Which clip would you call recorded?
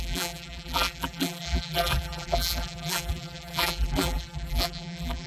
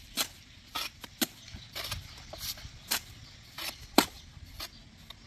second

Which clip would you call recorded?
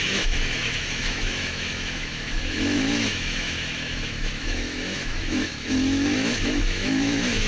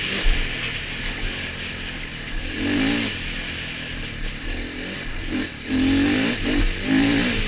second